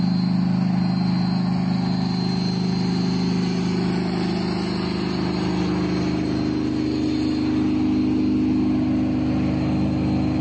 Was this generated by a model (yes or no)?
no